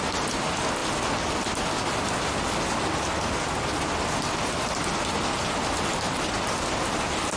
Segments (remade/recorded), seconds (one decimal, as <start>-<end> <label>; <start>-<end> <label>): 0.0-7.4 recorded